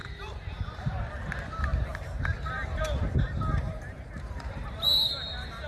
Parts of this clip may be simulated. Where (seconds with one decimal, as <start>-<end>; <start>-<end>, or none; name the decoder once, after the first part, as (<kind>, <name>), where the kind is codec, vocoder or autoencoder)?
0.0-1.0 (vocoder, BigVGAN v2); 1.7-5.1